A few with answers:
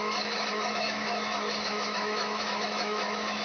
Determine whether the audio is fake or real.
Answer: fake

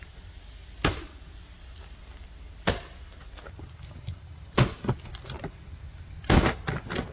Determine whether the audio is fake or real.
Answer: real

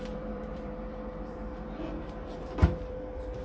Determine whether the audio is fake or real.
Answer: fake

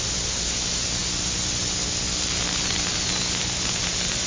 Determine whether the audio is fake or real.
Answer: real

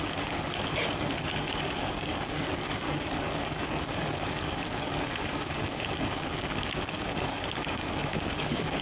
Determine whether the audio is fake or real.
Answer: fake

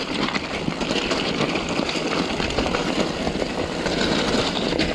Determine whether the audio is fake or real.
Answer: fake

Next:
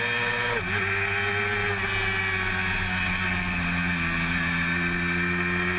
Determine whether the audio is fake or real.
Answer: real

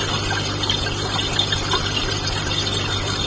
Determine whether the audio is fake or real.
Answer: fake